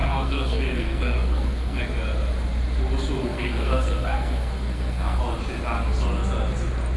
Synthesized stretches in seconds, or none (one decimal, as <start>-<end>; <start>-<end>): 0.0-1.8; 3.2-5.2